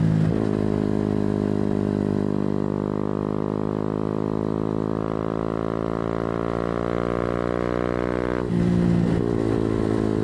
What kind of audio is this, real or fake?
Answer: real